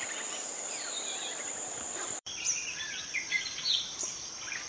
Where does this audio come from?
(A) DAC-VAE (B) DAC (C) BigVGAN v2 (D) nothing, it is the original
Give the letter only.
C